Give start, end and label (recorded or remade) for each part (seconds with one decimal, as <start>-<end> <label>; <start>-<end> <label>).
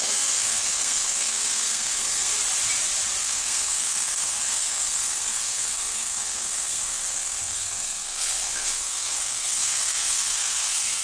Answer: 0.0-2.3 remade; 2.3-3.2 recorded; 3.2-11.0 remade